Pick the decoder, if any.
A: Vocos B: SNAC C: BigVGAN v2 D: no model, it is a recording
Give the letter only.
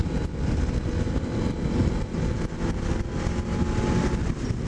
D